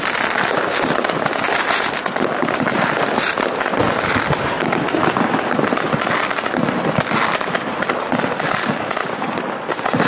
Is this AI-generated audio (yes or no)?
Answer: no